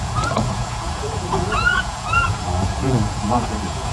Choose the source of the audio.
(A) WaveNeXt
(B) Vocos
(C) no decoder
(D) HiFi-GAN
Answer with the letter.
B